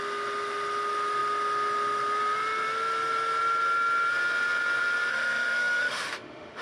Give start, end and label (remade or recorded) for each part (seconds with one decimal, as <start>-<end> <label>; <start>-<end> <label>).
0.0-5.1 recorded; 5.1-6.6 remade